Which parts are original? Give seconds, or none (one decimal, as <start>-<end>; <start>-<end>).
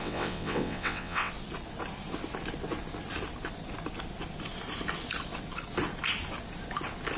1.3-7.2